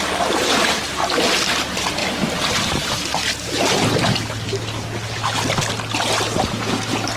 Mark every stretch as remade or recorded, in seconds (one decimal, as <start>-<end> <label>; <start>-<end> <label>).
0.0-7.2 recorded